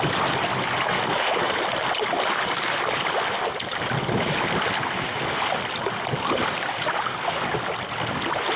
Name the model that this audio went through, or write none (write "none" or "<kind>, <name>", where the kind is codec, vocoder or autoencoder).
none